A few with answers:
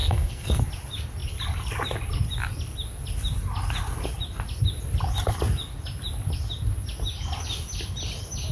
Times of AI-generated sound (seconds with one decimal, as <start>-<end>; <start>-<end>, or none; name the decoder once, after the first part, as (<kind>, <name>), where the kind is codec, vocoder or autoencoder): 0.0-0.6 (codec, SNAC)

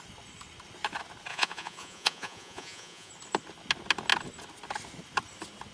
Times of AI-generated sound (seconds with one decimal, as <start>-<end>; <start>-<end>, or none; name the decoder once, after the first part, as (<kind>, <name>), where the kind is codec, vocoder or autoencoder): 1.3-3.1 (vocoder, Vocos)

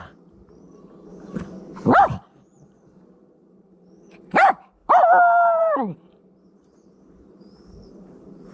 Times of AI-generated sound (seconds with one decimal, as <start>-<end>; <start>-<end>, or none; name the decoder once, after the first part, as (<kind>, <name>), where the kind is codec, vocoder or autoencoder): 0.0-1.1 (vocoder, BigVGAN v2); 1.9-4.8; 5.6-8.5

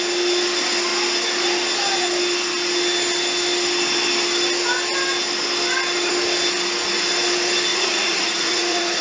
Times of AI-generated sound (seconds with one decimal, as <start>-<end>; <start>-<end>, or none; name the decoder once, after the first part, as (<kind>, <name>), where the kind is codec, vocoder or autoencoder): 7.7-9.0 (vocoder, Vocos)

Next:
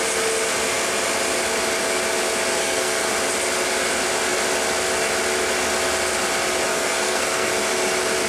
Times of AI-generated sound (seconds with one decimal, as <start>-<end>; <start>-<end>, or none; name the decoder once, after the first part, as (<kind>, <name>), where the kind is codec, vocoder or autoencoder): 2.6-3.1 (codec, SNAC); 6.7-7.5

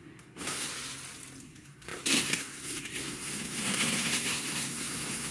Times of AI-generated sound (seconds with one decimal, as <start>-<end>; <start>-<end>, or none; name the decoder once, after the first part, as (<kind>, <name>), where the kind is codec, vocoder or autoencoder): 0.0-0.7 (codec, SNAC); 1.4-5.3